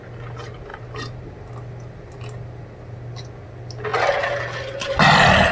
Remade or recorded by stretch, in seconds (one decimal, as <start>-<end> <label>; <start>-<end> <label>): 0.0-0.7 recorded; 0.7-1.4 remade; 1.4-5.5 recorded